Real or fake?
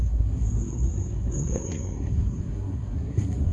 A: fake